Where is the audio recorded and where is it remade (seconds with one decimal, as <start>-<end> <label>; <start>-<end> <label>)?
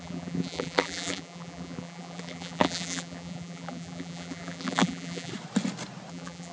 0.0-5.3 remade; 5.3-6.1 recorded; 6.1-6.5 remade